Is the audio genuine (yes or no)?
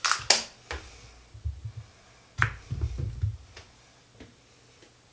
yes